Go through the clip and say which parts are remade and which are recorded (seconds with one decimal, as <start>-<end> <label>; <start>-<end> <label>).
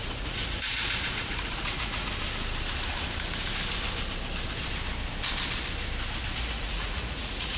0.0-2.1 remade; 2.1-6.4 recorded; 6.4-7.6 remade